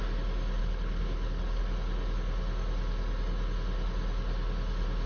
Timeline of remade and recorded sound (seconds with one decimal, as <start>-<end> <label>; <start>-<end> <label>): 0.0-0.6 recorded; 0.6-1.6 remade; 1.6-5.1 recorded